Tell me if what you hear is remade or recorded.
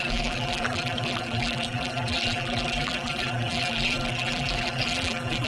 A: remade